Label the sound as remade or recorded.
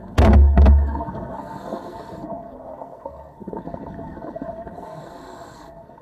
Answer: remade